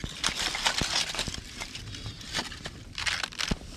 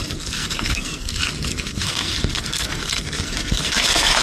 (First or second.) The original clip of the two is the first